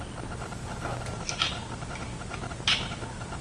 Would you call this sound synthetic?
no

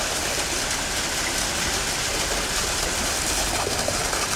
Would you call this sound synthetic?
no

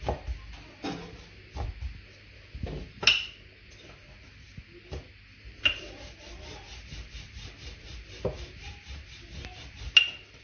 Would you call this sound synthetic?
no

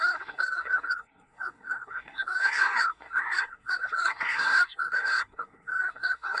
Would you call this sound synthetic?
yes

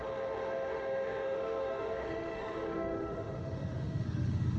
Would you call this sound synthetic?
yes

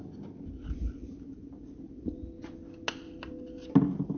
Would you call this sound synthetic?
no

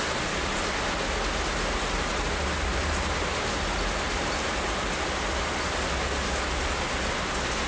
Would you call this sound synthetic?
no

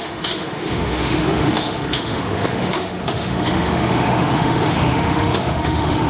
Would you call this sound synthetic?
yes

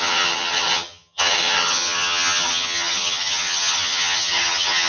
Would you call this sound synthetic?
yes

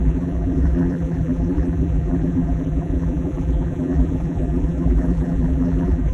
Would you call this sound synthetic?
yes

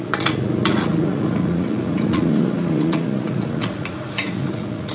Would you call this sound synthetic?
yes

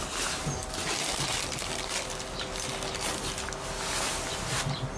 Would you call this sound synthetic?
no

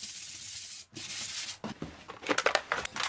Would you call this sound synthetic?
no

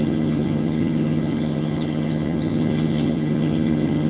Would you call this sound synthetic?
yes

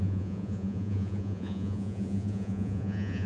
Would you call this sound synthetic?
yes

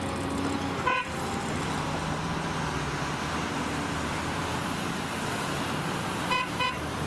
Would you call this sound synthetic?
yes